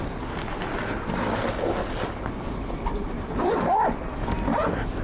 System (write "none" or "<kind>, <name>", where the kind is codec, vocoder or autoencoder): none